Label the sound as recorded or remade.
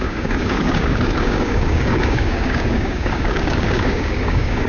remade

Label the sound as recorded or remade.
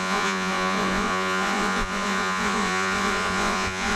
remade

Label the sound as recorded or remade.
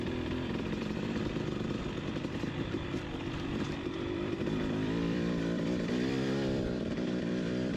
remade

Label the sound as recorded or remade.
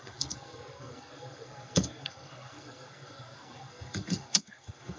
remade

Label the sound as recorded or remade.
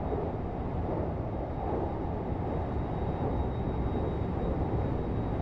recorded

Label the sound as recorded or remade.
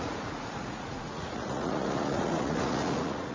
remade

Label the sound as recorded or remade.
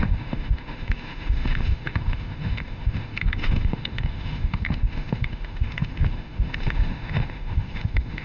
remade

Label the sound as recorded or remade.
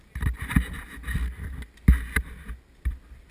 recorded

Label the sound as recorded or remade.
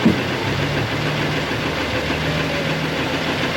recorded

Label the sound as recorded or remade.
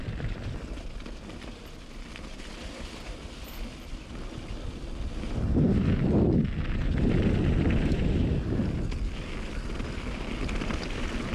recorded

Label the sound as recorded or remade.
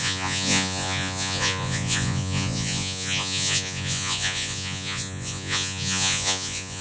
remade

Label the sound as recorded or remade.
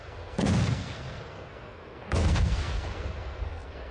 remade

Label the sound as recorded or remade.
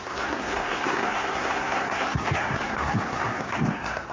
remade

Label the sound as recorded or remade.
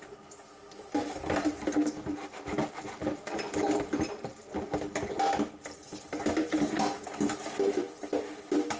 recorded